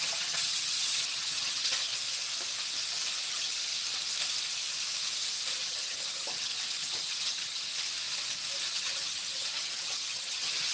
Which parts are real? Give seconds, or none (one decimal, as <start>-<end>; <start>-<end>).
1.9-3.3; 3.7-5.7; 7.7-8.7

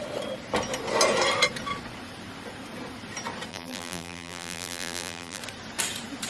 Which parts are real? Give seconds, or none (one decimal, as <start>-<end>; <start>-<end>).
0.0-3.5; 5.4-6.3

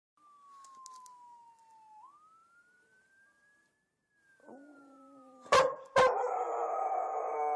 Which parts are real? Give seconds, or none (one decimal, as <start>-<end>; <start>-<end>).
0.0-2.4; 7.0-7.6

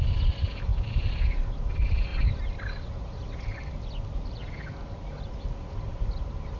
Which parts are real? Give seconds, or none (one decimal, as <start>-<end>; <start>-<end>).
0.0-6.6

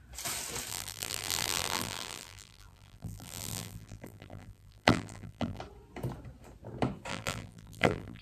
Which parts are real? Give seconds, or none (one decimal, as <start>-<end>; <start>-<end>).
0.0-0.7; 5.6-7.1

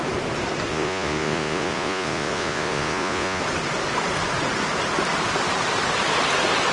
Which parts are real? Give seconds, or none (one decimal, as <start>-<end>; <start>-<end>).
0.0-0.7; 3.4-6.7